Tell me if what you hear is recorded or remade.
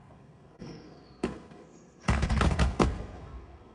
remade